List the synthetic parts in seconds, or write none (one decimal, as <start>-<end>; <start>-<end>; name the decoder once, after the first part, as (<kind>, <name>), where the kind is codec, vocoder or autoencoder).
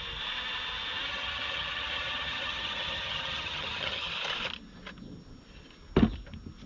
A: 1.1-4.1 (vocoder, HiFi-GAN)